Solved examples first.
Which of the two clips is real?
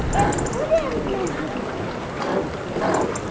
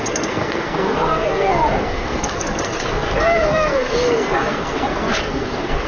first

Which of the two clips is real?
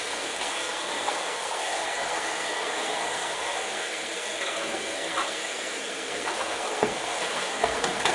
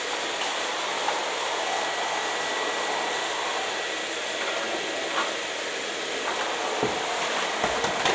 second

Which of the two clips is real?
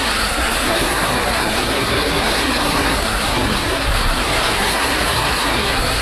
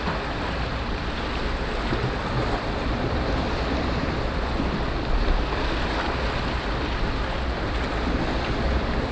second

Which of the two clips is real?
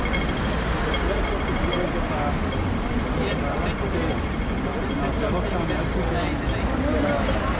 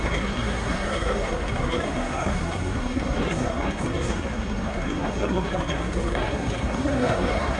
first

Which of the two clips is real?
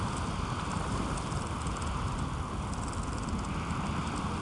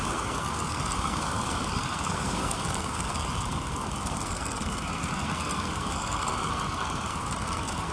first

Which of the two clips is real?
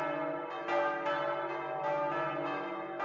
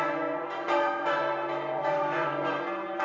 first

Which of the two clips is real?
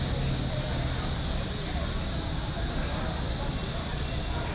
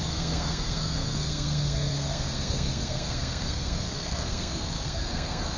first